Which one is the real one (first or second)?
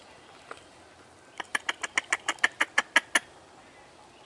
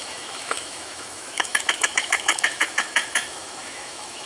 first